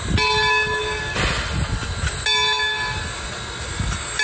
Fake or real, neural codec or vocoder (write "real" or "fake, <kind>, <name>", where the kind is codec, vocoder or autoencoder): real